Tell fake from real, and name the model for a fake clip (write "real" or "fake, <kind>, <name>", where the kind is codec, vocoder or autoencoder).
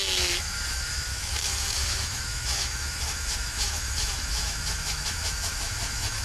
fake, autoencoder, DAC-VAE